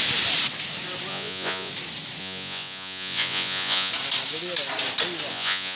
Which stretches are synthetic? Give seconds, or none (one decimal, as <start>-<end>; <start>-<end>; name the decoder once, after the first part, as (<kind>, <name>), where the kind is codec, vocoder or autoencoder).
1.1-1.7 (vocoder, Vocos); 2.2-3.9; 5.3-5.8

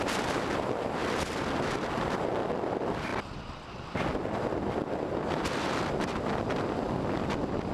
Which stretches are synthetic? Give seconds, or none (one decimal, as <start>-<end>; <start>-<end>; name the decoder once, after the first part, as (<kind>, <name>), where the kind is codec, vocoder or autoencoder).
none

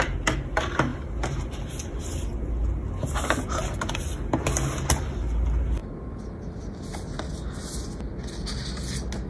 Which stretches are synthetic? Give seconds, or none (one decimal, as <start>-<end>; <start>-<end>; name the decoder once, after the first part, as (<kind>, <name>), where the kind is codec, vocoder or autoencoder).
none

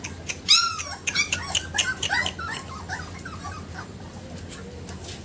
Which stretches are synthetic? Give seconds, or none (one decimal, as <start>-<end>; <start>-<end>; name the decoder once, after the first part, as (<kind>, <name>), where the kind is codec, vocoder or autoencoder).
none

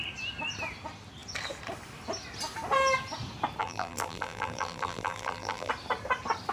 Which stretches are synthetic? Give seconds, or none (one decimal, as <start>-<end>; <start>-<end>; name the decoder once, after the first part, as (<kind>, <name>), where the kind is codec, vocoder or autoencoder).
3.6-5.7 (vocoder, BigVGAN v2)

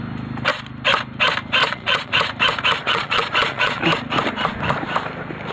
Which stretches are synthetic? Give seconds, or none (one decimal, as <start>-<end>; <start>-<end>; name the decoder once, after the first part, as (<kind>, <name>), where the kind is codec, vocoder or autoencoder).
1.6-2.1 (vocoder, Vocos); 2.8-3.8

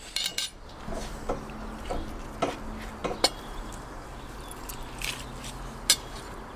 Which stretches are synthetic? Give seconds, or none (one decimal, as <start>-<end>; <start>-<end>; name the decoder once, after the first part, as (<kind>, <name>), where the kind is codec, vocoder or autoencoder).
none

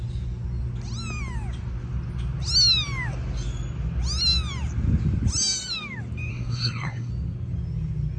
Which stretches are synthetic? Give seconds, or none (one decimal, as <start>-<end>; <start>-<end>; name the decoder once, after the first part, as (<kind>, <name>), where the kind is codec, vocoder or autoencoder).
6.3-7.1 (codec, SNAC)